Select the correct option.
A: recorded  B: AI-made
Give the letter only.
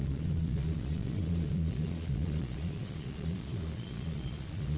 B